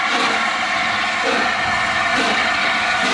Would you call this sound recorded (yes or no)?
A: yes